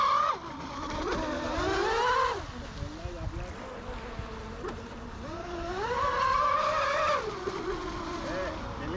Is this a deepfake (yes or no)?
no